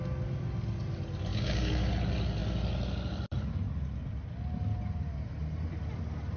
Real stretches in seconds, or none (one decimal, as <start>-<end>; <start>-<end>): 0.0-1.3; 1.9-6.4